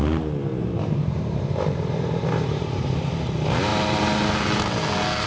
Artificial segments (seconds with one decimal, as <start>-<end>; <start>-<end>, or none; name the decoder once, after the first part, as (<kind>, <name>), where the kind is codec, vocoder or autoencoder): 0.5-3.1 (vocoder, BigVGAN v2)